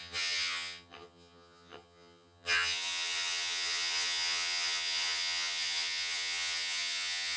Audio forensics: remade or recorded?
remade